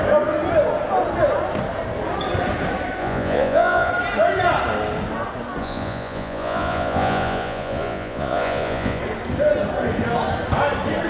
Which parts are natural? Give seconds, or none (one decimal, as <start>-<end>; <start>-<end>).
0.0-3.0; 3.9-5.6; 9.0-11.1